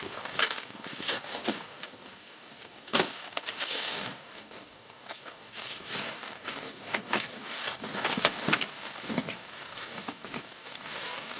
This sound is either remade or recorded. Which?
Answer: remade